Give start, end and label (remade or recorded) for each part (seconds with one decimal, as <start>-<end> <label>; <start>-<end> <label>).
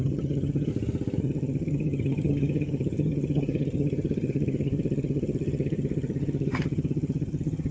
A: 0.0-0.7 remade; 0.7-1.2 recorded; 1.2-7.7 remade